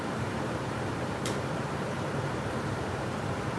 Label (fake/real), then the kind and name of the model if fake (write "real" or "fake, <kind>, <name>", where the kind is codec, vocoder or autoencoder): fake, vocoder, BigVGAN v2